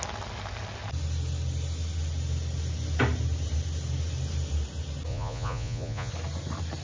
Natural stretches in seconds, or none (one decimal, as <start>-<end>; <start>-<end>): 0.0-5.1; 6.1-6.8